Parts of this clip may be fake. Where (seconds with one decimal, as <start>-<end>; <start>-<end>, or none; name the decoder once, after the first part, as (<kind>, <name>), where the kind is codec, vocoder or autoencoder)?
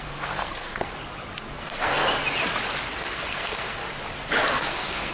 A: 0.0-0.9 (codec, SNAC); 1.6-2.0; 3.0-3.8; 4.5-5.1